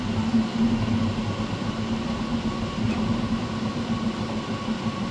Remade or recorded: recorded